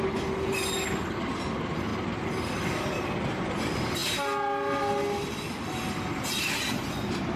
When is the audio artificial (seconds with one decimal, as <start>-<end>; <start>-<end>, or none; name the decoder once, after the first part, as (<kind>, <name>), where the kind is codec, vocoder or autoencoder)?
none